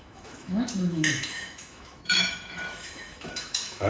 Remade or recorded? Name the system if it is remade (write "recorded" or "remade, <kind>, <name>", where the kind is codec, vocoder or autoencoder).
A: remade, autoencoder, DAC-VAE